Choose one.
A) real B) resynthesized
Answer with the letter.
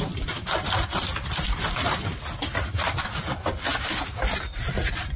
A